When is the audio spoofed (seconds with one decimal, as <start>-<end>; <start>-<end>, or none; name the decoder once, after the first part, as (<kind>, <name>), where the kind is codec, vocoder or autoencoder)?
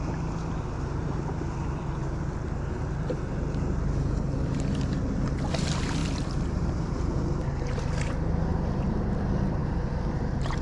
6.0-7.5 (vocoder, BigVGAN v2); 8.5-9.2